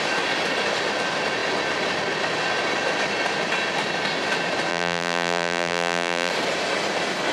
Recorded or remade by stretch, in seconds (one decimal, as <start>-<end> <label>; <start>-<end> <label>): 0.0-4.7 recorded; 4.7-6.3 remade; 6.3-7.3 recorded